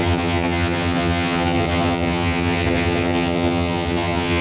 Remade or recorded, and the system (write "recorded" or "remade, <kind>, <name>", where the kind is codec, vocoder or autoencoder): remade, vocoder, HiFi-GAN